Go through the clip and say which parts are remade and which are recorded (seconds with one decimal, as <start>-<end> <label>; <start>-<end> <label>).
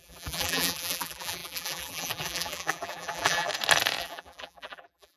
0.0-3.5 remade; 3.5-4.0 recorded; 4.0-5.2 remade